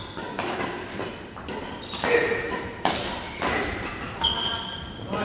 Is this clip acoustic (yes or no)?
yes